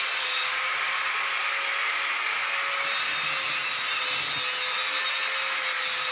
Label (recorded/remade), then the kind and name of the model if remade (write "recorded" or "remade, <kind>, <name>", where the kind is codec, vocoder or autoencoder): recorded